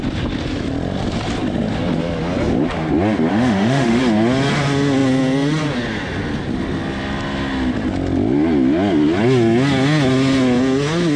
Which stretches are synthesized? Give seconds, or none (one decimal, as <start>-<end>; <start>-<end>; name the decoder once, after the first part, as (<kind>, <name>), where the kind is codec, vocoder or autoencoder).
3.3-4.0 (autoencoder, DAC-VAE)